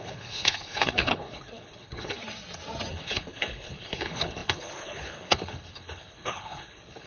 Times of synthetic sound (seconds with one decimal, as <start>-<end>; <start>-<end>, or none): 0.0-2.2; 2.9-7.1